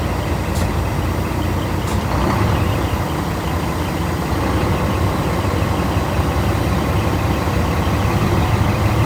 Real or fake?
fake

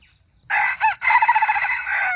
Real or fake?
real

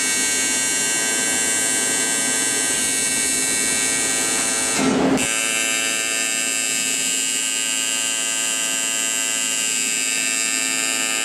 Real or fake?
real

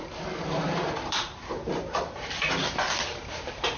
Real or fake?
fake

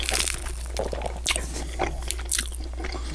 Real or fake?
real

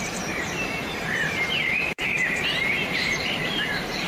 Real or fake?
fake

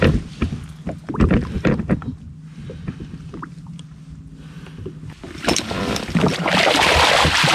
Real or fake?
real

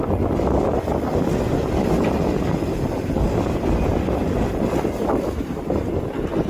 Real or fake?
real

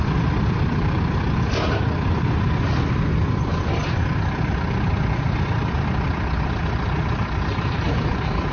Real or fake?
fake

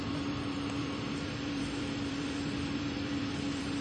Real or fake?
fake